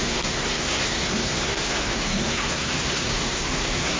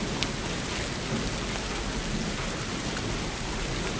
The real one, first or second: second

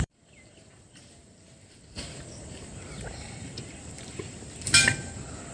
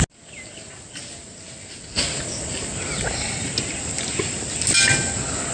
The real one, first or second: second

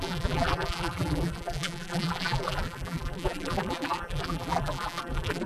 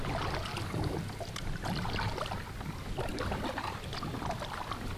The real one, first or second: second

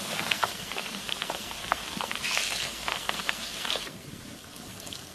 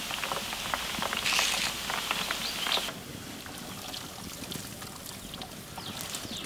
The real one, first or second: second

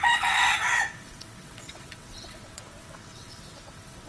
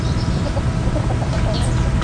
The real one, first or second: second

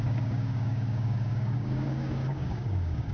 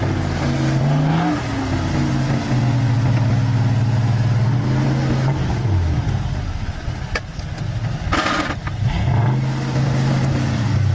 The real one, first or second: second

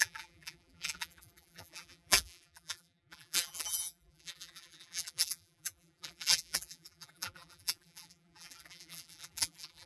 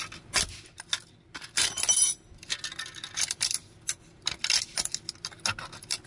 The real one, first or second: second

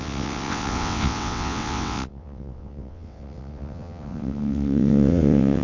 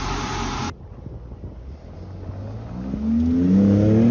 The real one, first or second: second